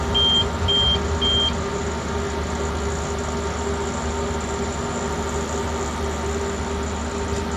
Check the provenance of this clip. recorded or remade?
recorded